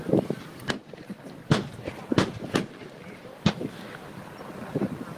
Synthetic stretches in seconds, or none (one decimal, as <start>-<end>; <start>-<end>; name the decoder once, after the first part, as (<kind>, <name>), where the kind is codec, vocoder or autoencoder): none